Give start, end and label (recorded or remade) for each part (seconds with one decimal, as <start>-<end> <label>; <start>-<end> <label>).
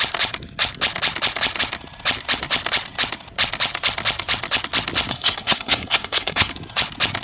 0.0-5.1 recorded; 5.1-6.5 remade; 6.5-7.2 recorded